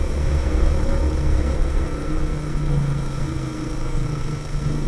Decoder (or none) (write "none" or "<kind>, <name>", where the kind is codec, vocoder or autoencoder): codec, SNAC